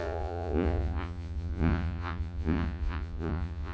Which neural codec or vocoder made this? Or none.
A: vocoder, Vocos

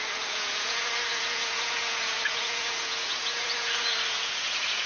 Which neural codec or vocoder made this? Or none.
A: vocoder, Vocos